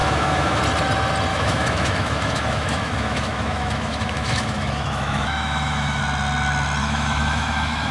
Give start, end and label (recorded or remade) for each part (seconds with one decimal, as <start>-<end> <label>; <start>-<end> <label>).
0.0-0.6 remade; 0.6-1.3 recorded; 1.3-6.0 remade; 6.0-6.8 recorded; 6.8-7.9 remade